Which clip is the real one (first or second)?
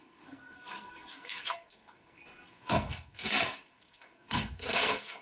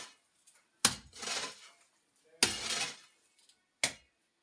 second